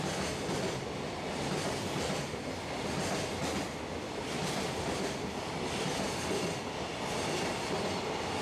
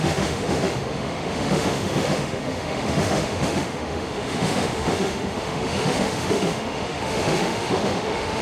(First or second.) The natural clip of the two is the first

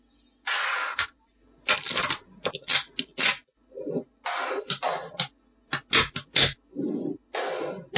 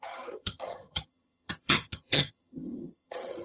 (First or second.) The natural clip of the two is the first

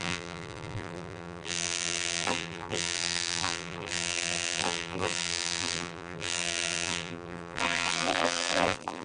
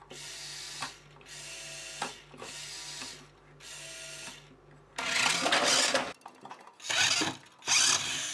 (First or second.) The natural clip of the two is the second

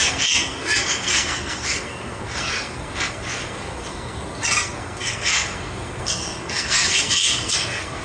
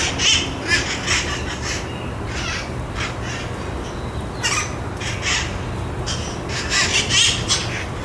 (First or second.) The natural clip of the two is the second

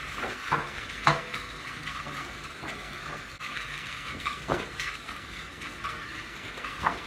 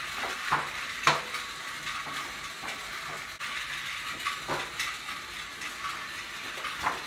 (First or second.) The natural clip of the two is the second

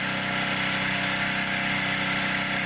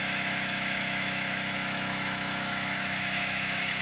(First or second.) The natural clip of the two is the first